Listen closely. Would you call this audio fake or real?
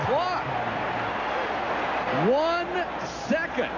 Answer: real